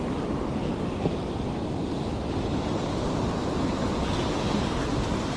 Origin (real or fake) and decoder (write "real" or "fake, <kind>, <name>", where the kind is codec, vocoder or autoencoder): real